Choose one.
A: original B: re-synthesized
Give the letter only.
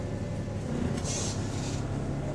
A